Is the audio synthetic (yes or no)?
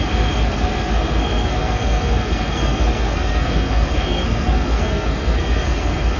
yes